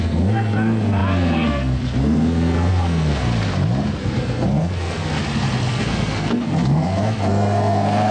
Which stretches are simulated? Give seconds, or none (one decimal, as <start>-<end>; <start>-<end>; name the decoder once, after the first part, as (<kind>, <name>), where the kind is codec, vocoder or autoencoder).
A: 0.0-3.3 (codec, SNAC); 4.0-5.2; 5.7-8.1